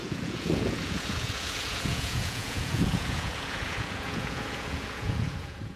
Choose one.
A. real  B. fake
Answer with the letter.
B